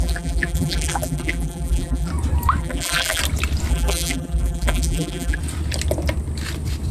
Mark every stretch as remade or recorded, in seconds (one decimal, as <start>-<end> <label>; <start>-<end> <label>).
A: 0.0-2.1 remade; 2.1-2.6 recorded; 2.6-3.2 remade; 3.2-3.7 recorded; 3.7-5.4 remade; 5.4-6.9 recorded